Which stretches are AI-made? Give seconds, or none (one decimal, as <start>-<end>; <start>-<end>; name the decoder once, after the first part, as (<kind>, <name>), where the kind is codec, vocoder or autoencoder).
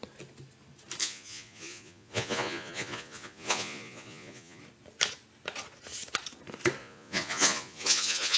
1.0-4.6 (vocoder, Vocos); 6.8-8.4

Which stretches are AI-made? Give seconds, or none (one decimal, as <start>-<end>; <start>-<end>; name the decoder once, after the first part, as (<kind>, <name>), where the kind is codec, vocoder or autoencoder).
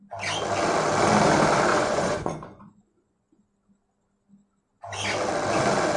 1.7-3.5 (vocoder, Vocos)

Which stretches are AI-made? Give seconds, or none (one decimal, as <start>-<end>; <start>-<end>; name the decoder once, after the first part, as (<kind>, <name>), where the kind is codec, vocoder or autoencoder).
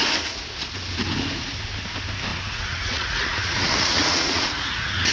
2.3-5.1 (vocoder, Vocos)